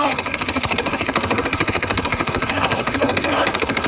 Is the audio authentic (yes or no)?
no